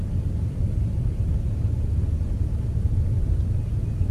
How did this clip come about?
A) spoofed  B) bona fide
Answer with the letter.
B